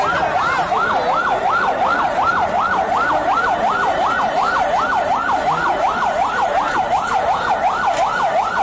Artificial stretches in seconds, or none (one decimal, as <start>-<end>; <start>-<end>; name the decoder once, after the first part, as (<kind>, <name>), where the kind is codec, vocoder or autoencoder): 2.3-7.5 (vocoder, BigVGAN v2)